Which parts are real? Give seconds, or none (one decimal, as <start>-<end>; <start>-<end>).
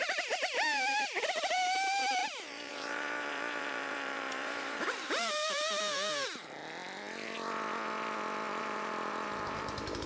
6.6-8.6